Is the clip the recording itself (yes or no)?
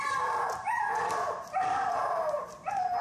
no